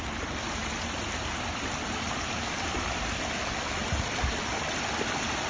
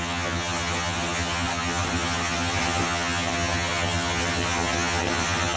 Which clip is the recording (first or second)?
first